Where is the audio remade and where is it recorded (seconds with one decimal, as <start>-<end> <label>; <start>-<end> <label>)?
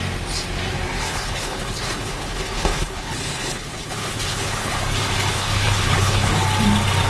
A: 0.0-1.0 recorded; 1.0-4.8 remade; 4.8-5.3 recorded; 5.3-6.3 remade; 6.3-7.1 recorded